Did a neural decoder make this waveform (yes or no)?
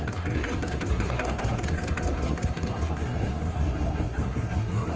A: yes